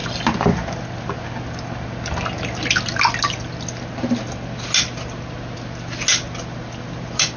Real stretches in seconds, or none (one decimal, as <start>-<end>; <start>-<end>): 1.2-7.4